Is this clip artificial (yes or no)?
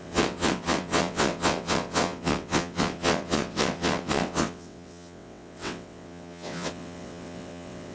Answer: yes